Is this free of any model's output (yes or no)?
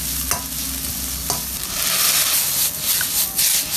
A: yes